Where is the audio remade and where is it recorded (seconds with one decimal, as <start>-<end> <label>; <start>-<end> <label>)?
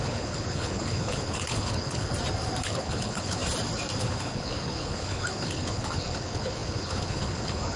0.0-2.1 remade; 2.1-2.6 recorded; 2.6-3.4 remade; 3.4-4.0 recorded; 4.0-7.8 remade